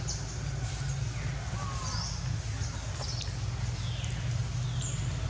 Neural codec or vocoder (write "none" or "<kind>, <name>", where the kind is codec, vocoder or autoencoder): none